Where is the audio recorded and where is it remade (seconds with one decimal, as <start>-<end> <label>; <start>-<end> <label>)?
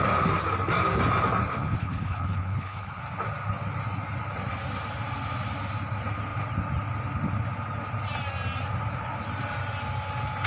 0.0-1.5 recorded; 1.5-3.0 remade; 3.0-10.5 recorded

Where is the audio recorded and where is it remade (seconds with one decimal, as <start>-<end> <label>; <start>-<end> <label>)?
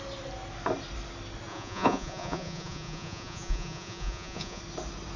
0.0-1.5 recorded; 1.5-4.6 remade; 4.6-5.2 recorded